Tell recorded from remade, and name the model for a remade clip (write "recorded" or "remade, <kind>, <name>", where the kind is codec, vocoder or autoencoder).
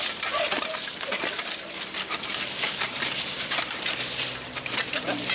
remade, vocoder, BigVGAN v2